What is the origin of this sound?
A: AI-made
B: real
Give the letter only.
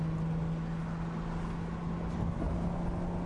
B